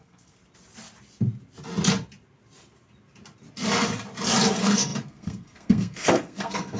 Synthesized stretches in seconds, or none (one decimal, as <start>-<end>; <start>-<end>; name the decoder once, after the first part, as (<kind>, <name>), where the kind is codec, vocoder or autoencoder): 0.0-0.4 (codec, SNAC); 4.5-6.8